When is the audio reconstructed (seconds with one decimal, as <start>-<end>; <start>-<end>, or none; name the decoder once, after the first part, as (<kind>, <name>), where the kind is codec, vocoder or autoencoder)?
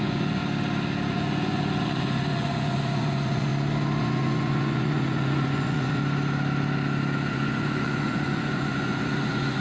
0.0-0.4 (vocoder, Vocos); 1.1-3.5; 4.0-6.0; 7.3-9.6